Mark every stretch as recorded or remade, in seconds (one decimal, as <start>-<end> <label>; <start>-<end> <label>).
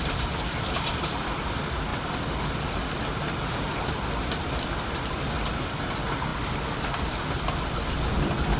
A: 0.0-1.9 remade; 1.9-5.1 recorded; 5.1-6.3 remade; 6.3-8.1 recorded; 8.1-8.6 remade